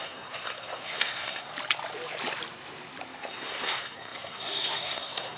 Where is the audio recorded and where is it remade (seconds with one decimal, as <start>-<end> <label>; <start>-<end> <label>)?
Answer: 0.0-1.5 remade; 1.5-3.2 recorded; 3.2-5.4 remade